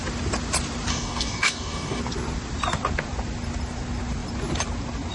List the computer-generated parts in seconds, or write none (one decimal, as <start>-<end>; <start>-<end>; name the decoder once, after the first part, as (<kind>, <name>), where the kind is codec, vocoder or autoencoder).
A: 0.9-2.0 (codec, DAC)